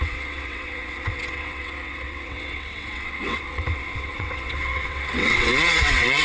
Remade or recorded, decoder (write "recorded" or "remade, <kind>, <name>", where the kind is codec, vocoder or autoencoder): remade, vocoder, WaveNeXt